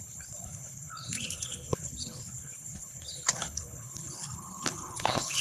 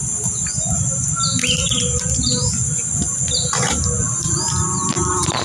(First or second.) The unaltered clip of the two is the second